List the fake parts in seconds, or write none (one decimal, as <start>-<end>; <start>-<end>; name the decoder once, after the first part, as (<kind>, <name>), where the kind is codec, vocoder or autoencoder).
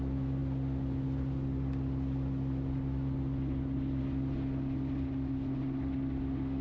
none